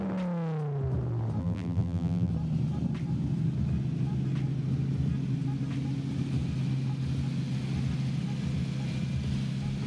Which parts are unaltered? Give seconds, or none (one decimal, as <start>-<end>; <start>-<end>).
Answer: 0.0-1.4; 2.3-9.9